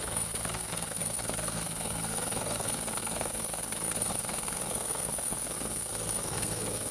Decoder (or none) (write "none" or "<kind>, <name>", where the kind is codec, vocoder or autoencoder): codec, SNAC